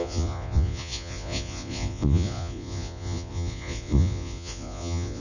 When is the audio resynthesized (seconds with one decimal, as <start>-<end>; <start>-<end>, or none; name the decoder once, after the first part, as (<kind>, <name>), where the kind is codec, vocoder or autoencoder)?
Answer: 0.0-5.2 (vocoder, Vocos)

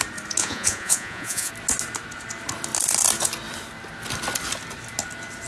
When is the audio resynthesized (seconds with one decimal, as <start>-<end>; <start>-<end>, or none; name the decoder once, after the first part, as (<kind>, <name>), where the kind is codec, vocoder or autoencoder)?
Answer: 0.4-1.5 (vocoder, Vocos)

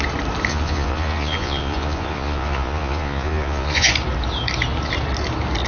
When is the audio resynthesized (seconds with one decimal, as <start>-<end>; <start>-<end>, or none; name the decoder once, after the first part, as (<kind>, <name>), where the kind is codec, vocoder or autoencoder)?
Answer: 0.5-3.9 (vocoder, Vocos)

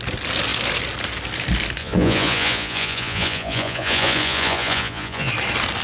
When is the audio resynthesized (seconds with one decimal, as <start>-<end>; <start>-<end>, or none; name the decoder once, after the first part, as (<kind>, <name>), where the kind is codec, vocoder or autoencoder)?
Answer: 1.8-5.3 (vocoder, Vocos)

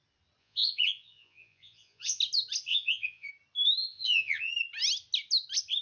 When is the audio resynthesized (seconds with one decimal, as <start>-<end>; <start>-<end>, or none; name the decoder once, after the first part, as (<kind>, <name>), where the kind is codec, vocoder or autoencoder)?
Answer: 0.4-2.2 (vocoder, Vocos); 2.7-3.3; 3.8-4.5